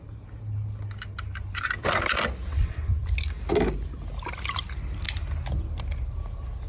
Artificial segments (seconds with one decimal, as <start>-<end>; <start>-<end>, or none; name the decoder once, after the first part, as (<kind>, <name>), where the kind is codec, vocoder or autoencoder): 2.5-3.0 (vocoder, WaveNeXt)